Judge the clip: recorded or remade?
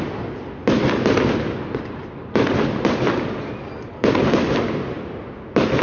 recorded